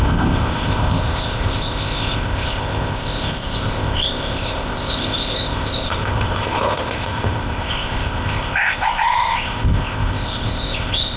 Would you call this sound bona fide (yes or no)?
no